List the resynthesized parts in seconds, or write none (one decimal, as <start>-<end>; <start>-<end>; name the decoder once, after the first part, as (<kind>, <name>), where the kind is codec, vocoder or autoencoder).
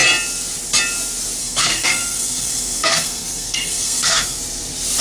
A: 1.4-4.4 (codec, SNAC)